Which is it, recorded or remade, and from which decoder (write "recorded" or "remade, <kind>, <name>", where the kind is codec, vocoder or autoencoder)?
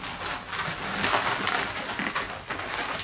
recorded